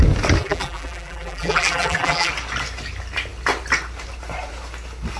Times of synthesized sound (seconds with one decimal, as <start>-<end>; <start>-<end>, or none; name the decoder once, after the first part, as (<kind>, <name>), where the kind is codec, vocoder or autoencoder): 0.4-2.3 (vocoder, BigVGAN v2)